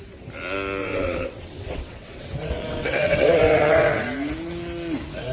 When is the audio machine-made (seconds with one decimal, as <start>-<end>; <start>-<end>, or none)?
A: 0.8-4.0